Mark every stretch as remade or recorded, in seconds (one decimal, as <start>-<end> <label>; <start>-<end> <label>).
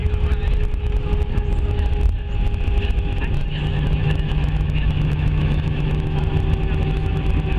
0.0-4.0 recorded; 4.0-6.2 remade; 6.2-7.6 recorded